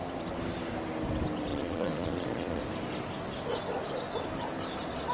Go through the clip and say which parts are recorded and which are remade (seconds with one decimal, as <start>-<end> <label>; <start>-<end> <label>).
0.0-1.5 recorded; 1.5-2.6 remade; 2.6-5.1 recorded